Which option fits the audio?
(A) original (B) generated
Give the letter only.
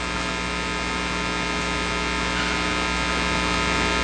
A